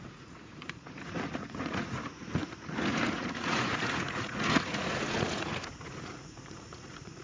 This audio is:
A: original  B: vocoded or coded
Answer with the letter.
B